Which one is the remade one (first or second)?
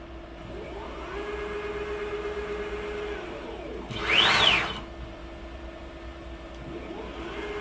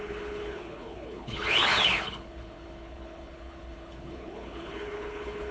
second